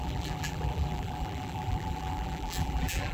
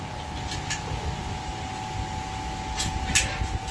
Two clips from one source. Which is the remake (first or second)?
first